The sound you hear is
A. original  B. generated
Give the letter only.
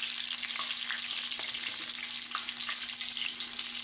A